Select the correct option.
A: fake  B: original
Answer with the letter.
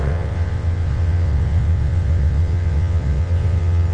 A